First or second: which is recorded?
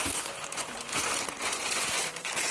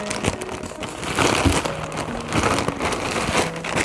second